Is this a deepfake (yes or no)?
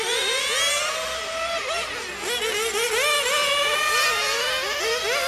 no